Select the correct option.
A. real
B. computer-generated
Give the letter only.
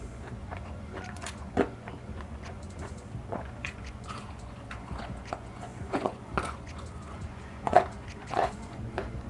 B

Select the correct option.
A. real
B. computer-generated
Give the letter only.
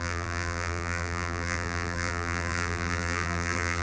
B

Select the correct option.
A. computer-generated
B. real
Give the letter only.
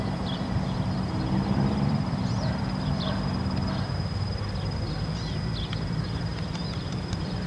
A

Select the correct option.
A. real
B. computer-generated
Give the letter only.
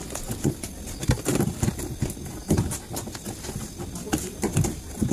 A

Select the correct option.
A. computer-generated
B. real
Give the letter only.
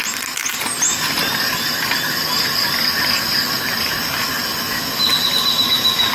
B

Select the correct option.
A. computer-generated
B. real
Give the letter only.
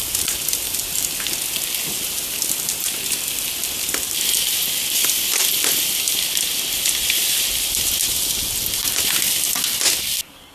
B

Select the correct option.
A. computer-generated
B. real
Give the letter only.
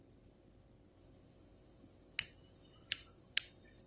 B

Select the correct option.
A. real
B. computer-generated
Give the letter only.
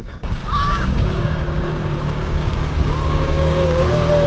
B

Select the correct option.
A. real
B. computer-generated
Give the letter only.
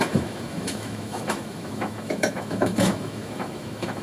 B